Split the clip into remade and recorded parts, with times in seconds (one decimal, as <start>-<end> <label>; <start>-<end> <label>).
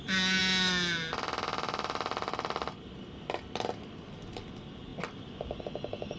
0.0-6.2 recorded